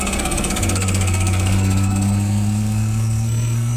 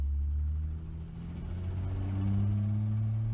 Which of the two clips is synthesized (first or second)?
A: first